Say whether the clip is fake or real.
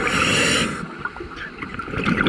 real